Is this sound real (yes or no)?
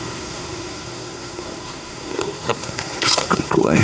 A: no